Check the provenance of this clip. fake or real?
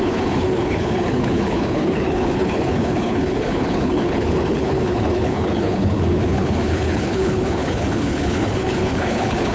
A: fake